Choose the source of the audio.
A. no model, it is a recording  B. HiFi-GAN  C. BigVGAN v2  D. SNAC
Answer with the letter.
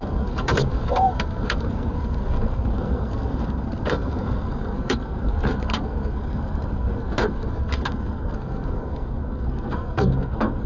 D